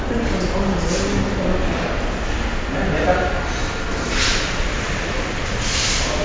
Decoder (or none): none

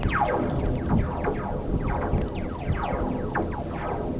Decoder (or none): none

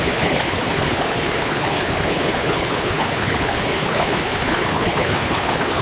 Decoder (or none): codec, HILCodec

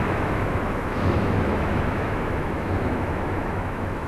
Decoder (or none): autoencoder, DAC-VAE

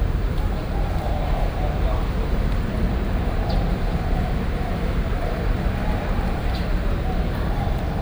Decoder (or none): vocoder, BigVGAN v2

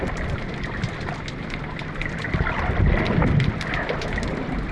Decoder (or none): none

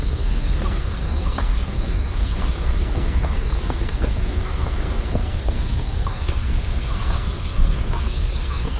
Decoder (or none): codec, SNAC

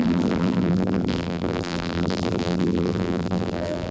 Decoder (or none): vocoder, BigVGAN v2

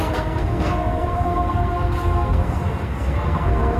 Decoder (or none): codec, SNAC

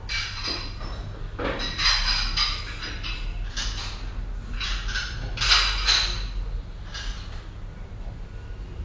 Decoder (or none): none